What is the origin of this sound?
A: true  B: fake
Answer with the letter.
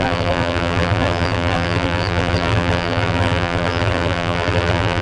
B